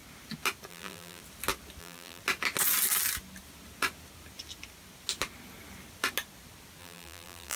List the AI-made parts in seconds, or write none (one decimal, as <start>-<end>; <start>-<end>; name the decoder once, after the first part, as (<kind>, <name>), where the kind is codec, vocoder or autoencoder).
0.7-1.2 (vocoder, BigVGAN v2); 1.8-2.2; 6.8-7.6